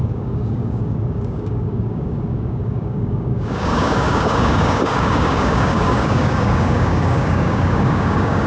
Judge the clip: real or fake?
fake